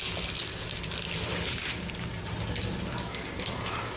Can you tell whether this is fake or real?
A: real